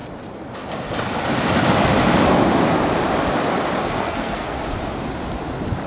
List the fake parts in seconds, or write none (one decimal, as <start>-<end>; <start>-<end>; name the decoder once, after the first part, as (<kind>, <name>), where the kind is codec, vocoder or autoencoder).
3.8-4.6 (codec, SNAC)